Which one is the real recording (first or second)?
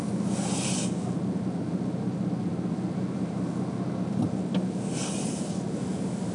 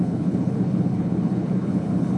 first